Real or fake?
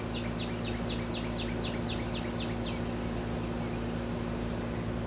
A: real